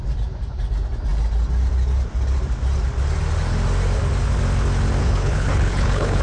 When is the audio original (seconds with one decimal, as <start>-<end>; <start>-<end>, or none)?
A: 0.0-5.0